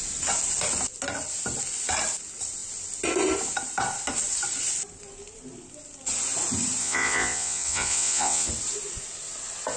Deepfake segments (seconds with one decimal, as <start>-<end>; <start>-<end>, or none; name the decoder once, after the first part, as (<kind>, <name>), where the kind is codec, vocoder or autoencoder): 6.8-8.5 (vocoder, Vocos)